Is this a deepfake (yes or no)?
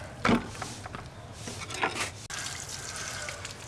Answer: no